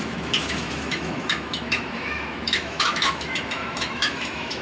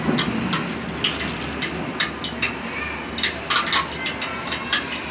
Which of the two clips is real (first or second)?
second